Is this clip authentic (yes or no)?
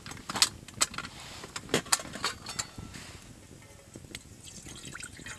yes